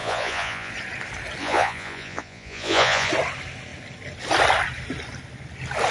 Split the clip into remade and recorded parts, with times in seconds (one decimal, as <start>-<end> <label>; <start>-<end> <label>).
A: 0.0-0.7 remade; 0.7-1.4 recorded; 1.4-3.1 remade; 3.1-5.9 recorded